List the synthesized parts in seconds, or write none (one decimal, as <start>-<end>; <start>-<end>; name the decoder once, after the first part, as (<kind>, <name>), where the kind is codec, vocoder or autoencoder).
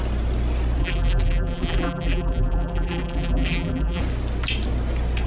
0.8-4.0 (vocoder, BigVGAN v2)